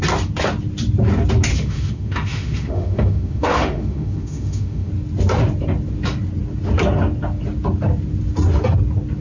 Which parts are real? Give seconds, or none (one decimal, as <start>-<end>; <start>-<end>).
0.0-1.5; 4.9-9.2